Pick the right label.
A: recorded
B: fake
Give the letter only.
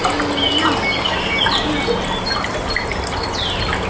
A